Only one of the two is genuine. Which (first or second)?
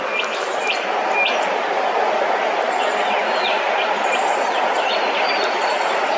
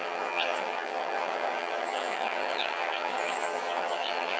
first